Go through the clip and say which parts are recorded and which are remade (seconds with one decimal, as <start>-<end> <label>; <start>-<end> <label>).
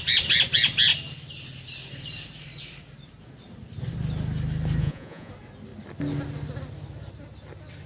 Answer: 0.0-4.8 recorded; 4.8-5.3 remade; 5.3-7.9 recorded